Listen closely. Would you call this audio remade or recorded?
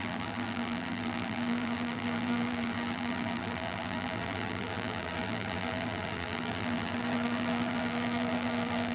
remade